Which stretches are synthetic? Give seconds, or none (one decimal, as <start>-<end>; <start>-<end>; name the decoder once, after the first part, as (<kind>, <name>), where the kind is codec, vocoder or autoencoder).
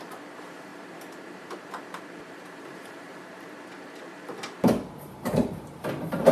0.0-6.3 (vocoder, BigVGAN v2)